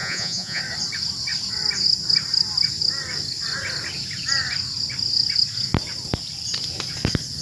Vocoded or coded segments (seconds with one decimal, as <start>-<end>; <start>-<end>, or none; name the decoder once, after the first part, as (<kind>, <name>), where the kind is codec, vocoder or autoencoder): 0.0-0.6 (vocoder, Vocos)

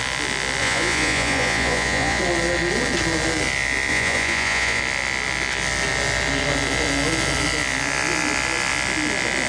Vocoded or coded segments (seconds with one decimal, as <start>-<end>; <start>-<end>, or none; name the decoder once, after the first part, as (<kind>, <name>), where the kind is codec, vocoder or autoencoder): 0.6-2.2 (vocoder, Vocos); 3.9-4.8

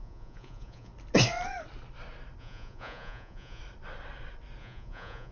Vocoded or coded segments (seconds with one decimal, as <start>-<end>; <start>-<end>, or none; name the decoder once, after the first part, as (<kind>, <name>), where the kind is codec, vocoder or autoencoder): 0.0-0.9 (vocoder, Vocos); 2.4-3.6; 4.6-5.3